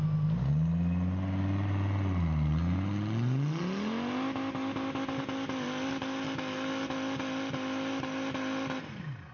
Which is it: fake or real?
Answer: real